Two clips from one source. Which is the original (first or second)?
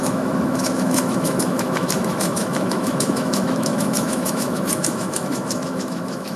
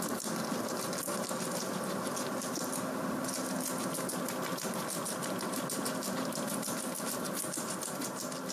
second